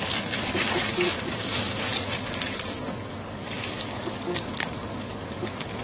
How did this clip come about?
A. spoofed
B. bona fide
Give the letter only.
A